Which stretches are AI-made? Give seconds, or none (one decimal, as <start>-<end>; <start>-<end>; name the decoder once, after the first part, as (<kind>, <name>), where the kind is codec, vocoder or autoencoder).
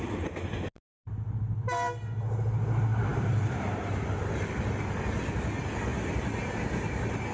none